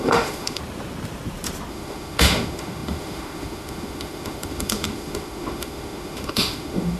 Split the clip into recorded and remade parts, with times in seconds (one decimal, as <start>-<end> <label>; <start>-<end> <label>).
0.0-0.6 remade; 0.6-1.7 recorded; 1.7-7.0 remade